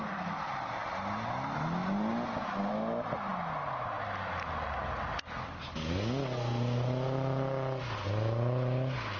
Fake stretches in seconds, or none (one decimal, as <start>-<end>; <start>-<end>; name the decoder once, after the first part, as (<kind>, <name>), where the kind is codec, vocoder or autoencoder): none